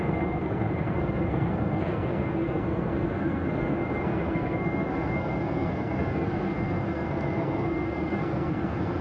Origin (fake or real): fake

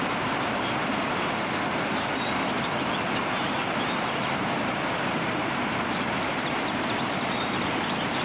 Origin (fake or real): fake